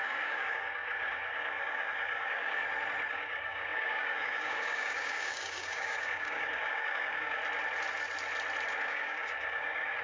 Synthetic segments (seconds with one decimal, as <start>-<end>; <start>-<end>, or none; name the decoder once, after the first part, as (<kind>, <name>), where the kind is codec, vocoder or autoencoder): 0.0-2.6 (codec, DAC); 3.1-7.4; 8.8-10.0